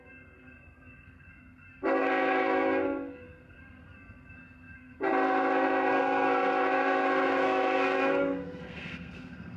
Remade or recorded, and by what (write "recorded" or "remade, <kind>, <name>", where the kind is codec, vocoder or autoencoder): remade, codec, SNAC